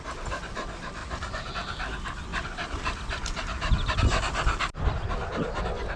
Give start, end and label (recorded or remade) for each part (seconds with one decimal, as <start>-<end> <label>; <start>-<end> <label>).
0.0-1.0 recorded; 1.0-1.5 remade; 1.5-6.0 recorded